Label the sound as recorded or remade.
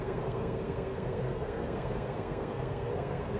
remade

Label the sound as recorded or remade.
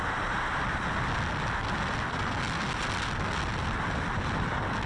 recorded